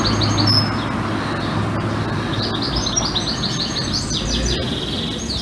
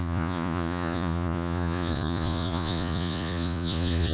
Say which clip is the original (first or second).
first